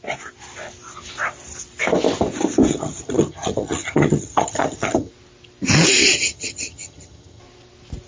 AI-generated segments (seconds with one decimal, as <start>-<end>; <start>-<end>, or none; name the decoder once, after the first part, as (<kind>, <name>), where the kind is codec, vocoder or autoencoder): 2.7-5.1 (vocoder, HiFi-GAN); 6.0-7.4